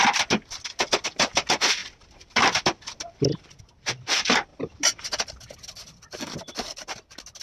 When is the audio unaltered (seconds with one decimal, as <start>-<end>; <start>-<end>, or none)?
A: 0.0-4.5; 5.3-7.4